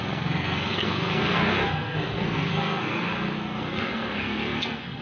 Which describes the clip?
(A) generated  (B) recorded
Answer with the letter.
A